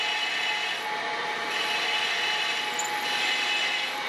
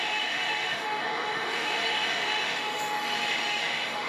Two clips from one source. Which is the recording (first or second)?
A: first